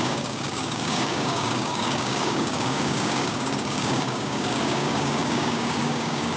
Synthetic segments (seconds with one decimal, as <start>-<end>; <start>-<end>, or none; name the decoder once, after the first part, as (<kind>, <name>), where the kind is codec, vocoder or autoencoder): 0.0-6.4 (codec, DAC)